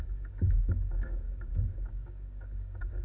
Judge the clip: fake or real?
fake